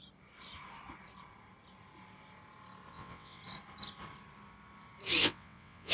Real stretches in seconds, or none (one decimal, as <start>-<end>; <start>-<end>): 0.0-2.9; 3.4-5.2